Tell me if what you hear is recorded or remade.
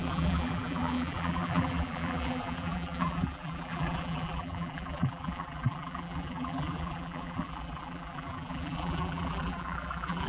remade